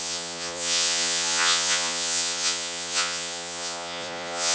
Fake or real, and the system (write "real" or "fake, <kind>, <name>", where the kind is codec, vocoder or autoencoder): fake, vocoder, Vocos